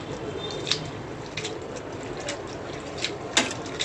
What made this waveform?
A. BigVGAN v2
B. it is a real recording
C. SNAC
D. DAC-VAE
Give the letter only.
B